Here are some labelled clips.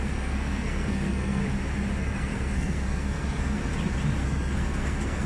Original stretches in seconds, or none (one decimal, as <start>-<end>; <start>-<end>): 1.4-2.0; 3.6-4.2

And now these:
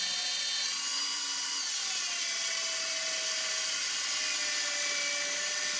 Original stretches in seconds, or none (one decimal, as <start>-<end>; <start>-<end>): 0.0-0.9; 1.5-5.8

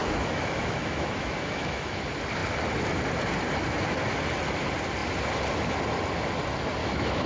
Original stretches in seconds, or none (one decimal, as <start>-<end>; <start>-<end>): 2.0-6.8

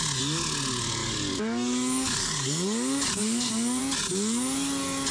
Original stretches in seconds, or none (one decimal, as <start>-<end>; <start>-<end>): 0.0-1.0; 3.8-5.1

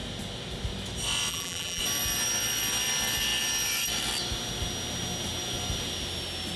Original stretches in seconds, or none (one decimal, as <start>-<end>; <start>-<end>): 0.0-1.3; 1.8-6.6

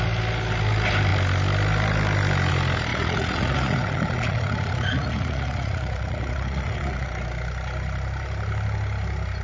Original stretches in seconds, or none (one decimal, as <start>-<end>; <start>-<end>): 0.0-2.9; 7.1-9.4